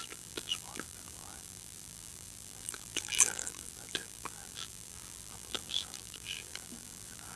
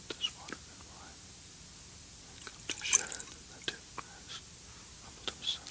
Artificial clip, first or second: first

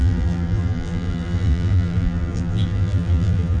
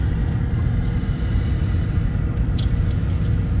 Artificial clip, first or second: first